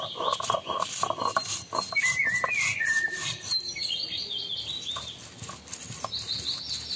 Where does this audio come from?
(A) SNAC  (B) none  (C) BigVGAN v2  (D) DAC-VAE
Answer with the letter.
B